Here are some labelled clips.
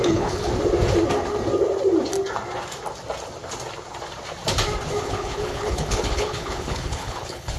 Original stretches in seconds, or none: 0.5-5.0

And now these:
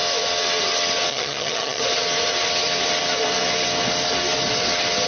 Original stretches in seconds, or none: 0.0-1.1; 1.8-5.1

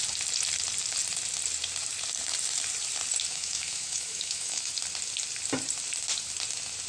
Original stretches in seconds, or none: 0.0-3.3; 4.7-6.9

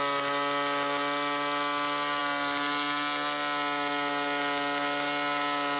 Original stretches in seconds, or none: 0.0-5.8

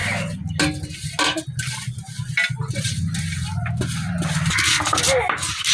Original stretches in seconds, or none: 0.0-5.7

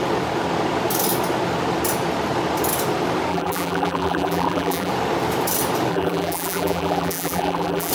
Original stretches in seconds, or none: 0.0-3.3; 4.9-5.9

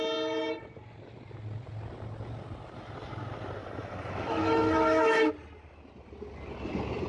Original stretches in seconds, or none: 0.0-3.6; 5.3-7.1

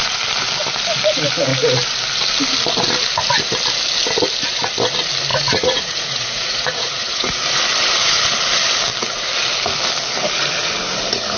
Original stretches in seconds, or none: 0.0-5.3; 7.4-11.4